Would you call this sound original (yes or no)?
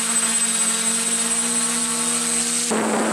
yes